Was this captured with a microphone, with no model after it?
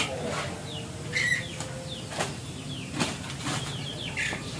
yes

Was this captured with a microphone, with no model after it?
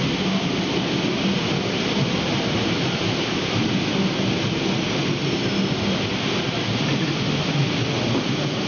yes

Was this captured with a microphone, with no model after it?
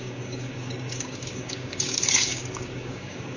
no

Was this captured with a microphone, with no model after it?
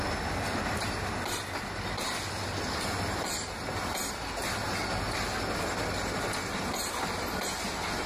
yes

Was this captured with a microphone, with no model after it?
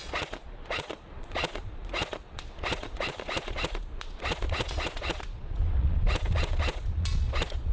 no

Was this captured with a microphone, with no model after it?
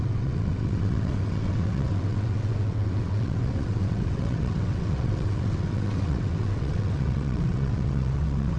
no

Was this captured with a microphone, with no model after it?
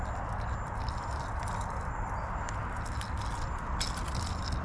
yes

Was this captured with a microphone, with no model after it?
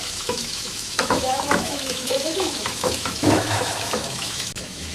no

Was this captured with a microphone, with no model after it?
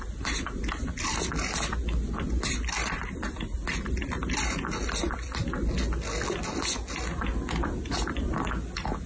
yes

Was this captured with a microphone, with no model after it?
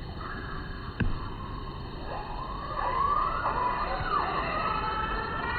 yes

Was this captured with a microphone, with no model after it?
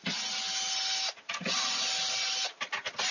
yes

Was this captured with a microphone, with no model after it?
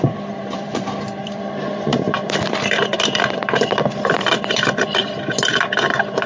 no